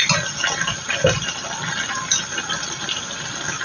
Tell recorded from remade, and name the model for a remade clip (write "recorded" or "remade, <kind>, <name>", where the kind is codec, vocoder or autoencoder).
recorded